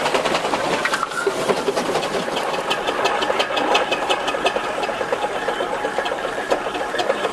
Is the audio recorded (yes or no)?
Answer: no